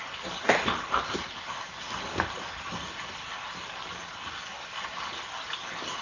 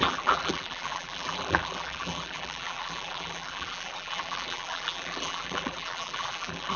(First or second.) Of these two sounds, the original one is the first